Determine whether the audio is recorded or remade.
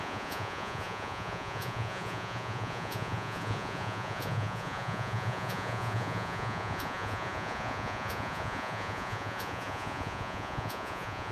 remade